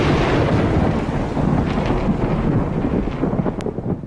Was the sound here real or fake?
real